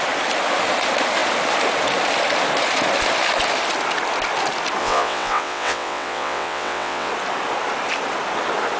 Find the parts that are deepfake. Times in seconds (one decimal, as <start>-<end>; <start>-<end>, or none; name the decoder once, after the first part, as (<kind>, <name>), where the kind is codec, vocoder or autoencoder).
4.8-7.1 (vocoder, WaveNeXt)

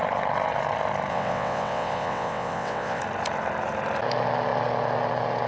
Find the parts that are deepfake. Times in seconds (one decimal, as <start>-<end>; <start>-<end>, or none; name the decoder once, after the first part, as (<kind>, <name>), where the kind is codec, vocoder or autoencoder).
1.1-3.0 (vocoder, WaveNeXt)

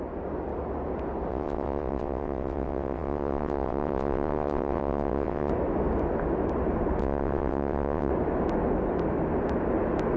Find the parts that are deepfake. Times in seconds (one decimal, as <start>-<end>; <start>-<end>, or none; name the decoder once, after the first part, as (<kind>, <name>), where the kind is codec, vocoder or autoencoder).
1.3-5.5 (vocoder, WaveNeXt); 7.0-8.1

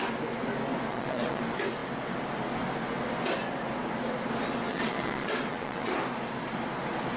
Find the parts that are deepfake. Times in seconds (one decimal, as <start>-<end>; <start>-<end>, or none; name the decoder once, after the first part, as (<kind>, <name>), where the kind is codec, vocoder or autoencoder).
0.9-1.4 (vocoder, WaveNeXt); 4.7-5.9

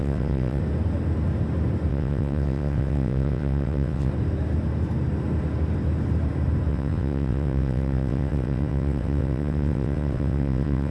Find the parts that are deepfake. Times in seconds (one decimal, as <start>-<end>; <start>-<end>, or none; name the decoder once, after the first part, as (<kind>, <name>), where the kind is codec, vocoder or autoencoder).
0.0-0.6 (vocoder, WaveNeXt); 1.9-4.1; 6.7-10.9

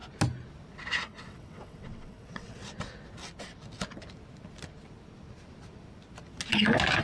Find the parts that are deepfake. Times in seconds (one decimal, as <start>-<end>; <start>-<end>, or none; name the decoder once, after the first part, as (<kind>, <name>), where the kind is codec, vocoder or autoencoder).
0.8-2.6 (vocoder, WaveNeXt)

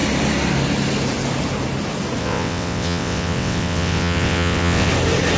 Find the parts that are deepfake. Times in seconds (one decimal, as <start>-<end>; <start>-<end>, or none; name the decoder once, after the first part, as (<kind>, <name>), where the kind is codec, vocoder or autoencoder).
2.2-4.9 (vocoder, WaveNeXt)